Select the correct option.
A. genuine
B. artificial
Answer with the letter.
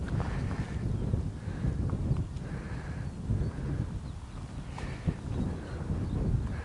A